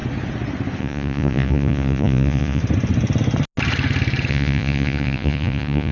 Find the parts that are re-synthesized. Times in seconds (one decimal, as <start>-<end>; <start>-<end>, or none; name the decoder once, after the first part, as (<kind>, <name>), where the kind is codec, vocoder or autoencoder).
0.8-2.6 (vocoder, Vocos); 4.3-5.9